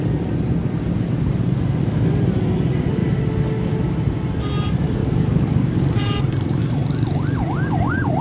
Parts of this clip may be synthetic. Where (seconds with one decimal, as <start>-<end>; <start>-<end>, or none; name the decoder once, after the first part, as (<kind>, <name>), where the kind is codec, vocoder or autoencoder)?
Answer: 5.0-6.0 (codec, DAC)